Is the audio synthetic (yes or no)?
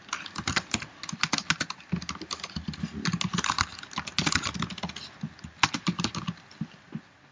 no